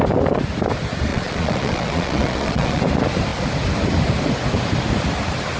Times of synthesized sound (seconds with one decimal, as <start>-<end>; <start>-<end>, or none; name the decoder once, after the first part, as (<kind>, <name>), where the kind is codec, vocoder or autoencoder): 1.1-2.8 (vocoder, Vocos)